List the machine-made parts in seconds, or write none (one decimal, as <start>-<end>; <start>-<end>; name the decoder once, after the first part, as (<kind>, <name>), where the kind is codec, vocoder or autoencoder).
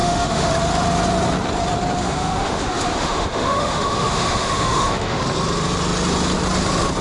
0.0-0.5 (autoencoder, DAC-VAE); 2.0-5.2